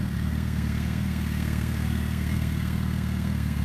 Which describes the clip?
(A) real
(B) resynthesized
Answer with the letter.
B